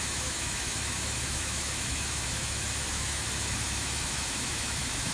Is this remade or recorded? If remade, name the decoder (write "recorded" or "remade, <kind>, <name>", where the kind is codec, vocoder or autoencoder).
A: remade, autoencoder, DAC-VAE